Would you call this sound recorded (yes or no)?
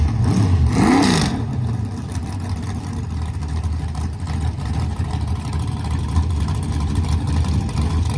yes